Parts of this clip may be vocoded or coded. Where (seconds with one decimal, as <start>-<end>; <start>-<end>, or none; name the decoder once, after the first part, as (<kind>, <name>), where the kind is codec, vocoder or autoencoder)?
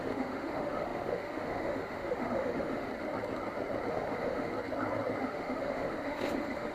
0.0-2.9 (autoencoder, DAC-VAE); 3.9-4.5; 5.2-6.7